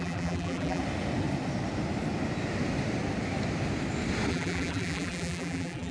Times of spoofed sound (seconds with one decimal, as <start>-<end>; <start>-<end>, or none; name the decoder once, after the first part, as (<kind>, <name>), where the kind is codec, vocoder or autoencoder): 0.0-0.8 (vocoder, BigVGAN v2); 4.3-5.9